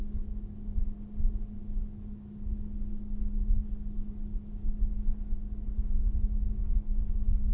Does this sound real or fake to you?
real